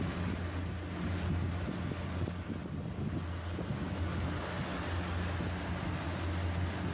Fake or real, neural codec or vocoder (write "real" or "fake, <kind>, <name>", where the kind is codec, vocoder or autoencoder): real